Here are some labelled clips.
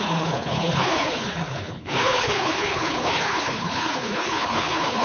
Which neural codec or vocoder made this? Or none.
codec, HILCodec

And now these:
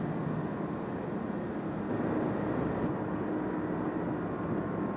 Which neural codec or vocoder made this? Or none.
none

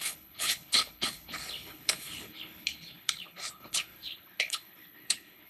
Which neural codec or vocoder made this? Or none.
codec, HILCodec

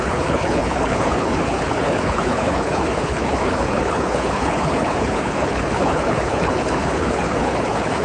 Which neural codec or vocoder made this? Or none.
codec, HILCodec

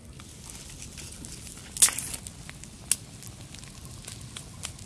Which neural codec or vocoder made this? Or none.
none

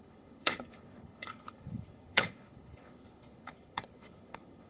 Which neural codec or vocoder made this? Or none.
codec, HILCodec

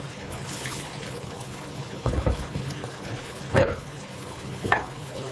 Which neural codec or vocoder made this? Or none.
codec, HILCodec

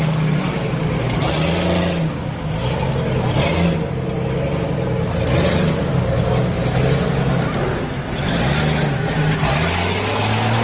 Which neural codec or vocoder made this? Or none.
none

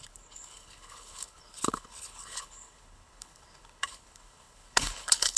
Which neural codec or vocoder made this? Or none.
codec, HILCodec